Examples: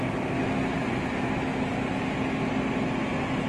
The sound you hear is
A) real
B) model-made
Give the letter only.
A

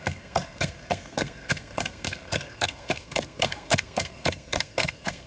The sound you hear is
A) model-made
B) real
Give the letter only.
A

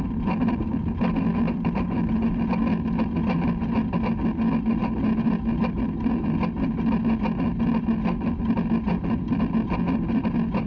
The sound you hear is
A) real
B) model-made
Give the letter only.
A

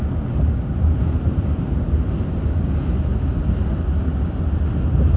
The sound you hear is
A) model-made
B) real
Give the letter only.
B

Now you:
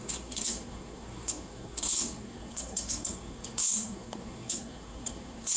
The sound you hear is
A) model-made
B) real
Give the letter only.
A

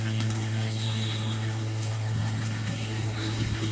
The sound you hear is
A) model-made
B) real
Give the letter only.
A